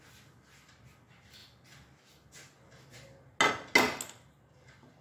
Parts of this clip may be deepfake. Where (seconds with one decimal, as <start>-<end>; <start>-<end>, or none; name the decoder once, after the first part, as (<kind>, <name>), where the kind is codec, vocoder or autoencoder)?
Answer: none